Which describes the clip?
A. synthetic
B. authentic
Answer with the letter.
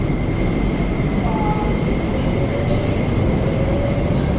B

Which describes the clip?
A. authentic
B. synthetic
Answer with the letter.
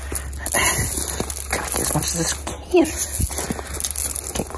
A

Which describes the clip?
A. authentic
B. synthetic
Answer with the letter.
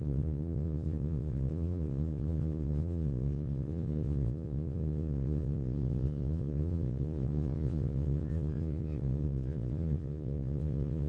B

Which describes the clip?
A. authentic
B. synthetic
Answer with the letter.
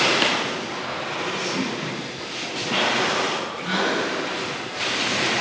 A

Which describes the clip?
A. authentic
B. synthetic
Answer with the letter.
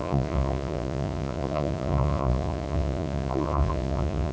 B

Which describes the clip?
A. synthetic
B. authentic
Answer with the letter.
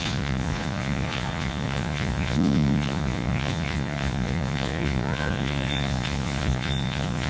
A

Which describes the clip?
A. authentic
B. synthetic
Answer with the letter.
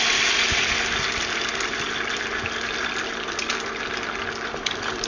A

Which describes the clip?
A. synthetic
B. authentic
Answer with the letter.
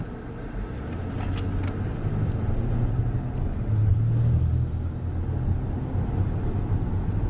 B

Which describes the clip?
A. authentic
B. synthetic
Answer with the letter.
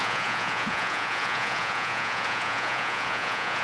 B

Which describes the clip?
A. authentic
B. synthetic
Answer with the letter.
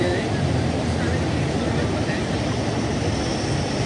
A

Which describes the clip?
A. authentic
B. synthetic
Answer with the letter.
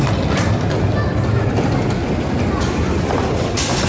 A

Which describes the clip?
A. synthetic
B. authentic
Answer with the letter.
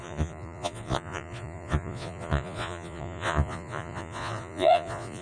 A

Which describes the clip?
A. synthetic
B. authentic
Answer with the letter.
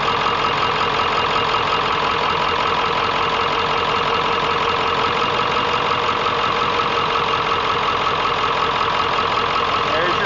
B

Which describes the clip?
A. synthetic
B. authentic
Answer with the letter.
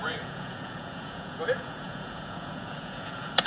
A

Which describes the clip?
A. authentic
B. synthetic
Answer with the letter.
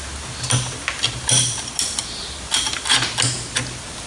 A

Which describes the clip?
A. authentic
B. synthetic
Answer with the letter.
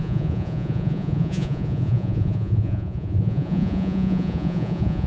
B